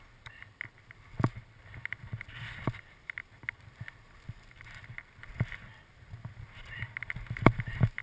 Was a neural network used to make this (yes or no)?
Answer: no